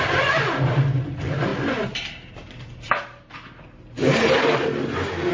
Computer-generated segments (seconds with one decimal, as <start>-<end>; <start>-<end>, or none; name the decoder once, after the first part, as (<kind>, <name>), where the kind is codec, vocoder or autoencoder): 0.0-1.5 (vocoder, BigVGAN v2); 2.3-4.0